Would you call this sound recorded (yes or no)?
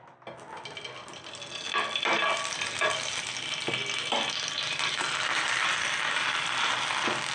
yes